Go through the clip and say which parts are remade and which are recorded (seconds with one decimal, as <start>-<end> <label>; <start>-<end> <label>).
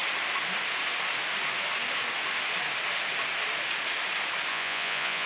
0.0-4.5 recorded; 4.5-5.3 remade